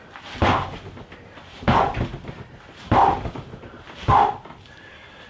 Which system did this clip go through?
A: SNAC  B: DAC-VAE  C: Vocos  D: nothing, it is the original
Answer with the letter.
D